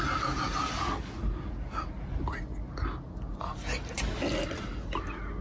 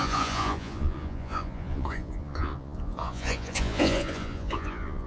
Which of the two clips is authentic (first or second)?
first